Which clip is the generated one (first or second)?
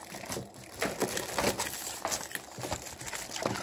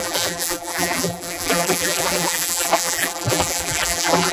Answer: second